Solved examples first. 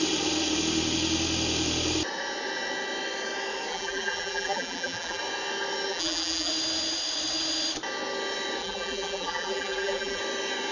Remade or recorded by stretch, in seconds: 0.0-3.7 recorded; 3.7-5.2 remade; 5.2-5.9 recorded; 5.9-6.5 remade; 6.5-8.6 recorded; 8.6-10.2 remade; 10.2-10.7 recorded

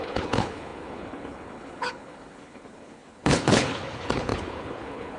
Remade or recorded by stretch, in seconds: 0.0-5.2 remade

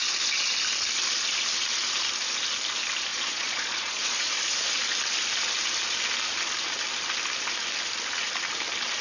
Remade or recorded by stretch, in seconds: 0.0-3.1 recorded; 3.1-4.3 remade; 4.3-9.0 recorded